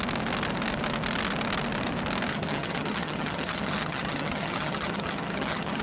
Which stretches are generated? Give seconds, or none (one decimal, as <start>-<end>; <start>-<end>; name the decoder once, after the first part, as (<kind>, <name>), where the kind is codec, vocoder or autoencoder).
2.3-5.8 (vocoder, HiFi-GAN)